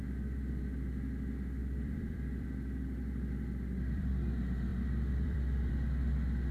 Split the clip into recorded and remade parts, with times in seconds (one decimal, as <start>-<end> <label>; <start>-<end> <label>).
0.0-1.6 recorded; 1.6-4.1 remade; 4.1-4.7 recorded; 4.7-5.7 remade; 5.7-6.5 recorded